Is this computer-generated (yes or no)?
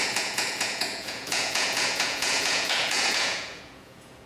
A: yes